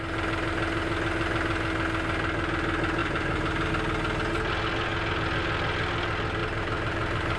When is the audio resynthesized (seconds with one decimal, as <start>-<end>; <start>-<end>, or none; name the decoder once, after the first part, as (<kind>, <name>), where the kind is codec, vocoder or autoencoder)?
3.0-3.7 (vocoder, BigVGAN v2); 6.4-7.4